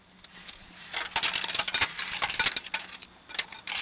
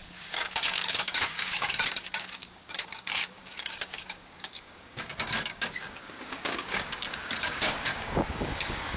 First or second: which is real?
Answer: first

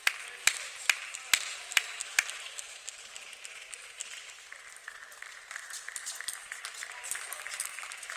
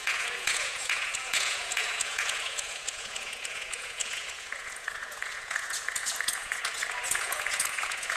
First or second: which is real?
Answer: first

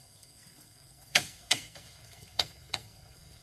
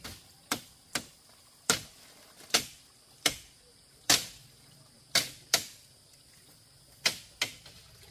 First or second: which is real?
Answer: second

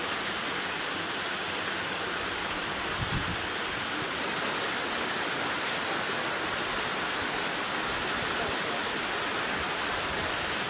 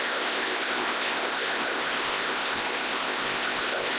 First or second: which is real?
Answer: first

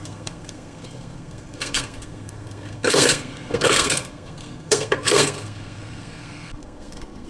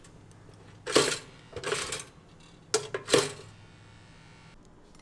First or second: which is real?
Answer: second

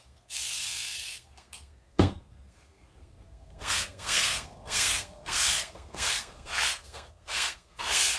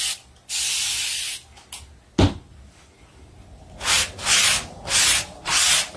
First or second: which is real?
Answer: second